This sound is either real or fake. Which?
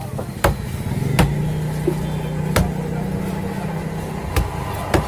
real